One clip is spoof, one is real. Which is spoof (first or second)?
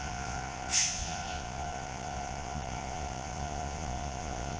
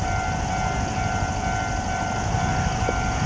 first